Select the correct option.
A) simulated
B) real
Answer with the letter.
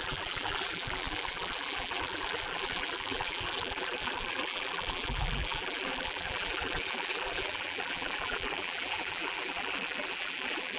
A